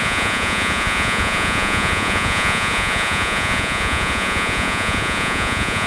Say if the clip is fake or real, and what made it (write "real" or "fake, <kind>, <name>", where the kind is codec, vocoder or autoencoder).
fake, vocoder, Vocos